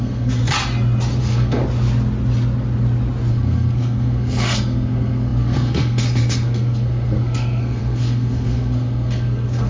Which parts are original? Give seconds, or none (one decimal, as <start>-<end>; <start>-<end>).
0.4-1.2; 1.6-3.3